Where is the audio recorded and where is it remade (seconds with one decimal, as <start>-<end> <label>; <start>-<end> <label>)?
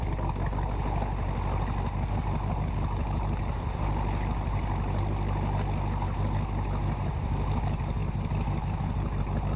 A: 0.0-9.6 recorded